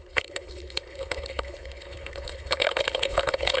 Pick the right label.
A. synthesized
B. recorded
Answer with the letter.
A